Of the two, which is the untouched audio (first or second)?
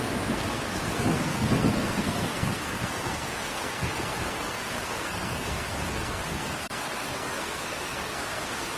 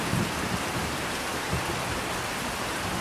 second